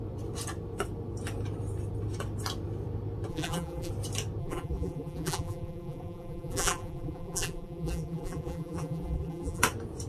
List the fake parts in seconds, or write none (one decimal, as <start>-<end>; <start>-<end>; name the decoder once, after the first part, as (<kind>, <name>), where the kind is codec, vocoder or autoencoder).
3.3-3.9 (vocoder, BigVGAN v2); 4.4-9.6